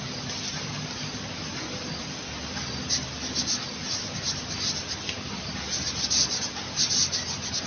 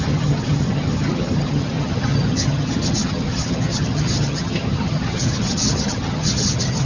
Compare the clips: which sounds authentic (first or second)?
first